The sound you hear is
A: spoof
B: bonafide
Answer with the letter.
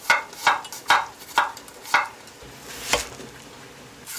B